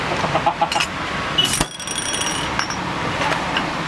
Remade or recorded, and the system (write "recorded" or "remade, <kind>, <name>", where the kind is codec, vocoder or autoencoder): recorded